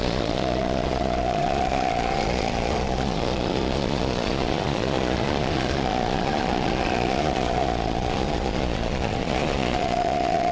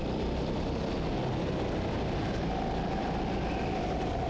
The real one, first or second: second